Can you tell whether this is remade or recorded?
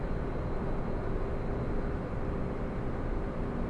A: recorded